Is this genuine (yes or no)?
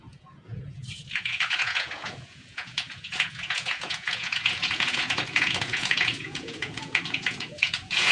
no